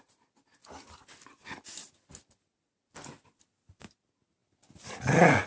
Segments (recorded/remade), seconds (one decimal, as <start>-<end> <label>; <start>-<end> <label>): 0.0-5.5 recorded